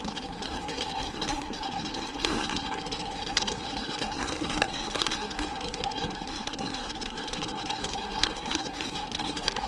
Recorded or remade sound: remade